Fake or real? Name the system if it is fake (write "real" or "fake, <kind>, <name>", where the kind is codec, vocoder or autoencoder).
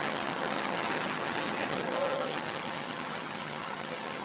fake, vocoder, HiFi-GAN